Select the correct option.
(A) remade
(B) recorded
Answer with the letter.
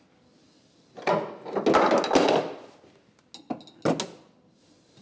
B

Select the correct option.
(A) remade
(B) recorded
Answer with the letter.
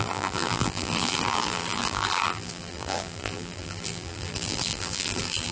A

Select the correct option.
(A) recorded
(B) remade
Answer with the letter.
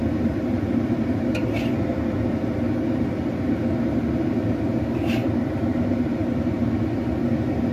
B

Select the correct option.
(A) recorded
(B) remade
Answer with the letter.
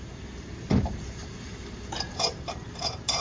B